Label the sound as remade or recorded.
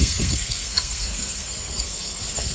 remade